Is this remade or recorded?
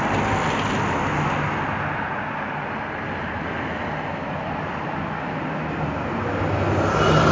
recorded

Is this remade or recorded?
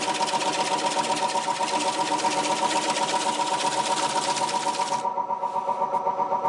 recorded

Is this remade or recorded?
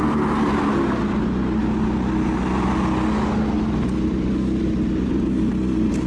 recorded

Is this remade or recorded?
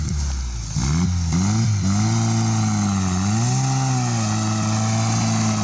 recorded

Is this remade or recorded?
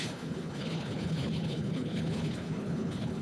remade